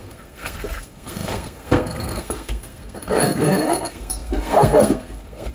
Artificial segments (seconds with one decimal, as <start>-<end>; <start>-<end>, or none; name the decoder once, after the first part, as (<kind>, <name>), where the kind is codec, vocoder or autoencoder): 0.0-5.5 (codec, SNAC)